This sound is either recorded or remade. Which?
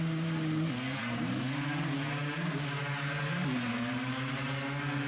recorded